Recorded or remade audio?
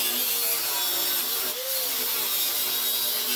recorded